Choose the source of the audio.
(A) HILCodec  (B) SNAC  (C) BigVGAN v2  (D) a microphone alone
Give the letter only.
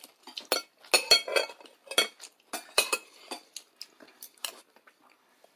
D